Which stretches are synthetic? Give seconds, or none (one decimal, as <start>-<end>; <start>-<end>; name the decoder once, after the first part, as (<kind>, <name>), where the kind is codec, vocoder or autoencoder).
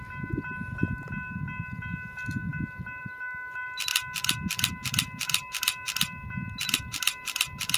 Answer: none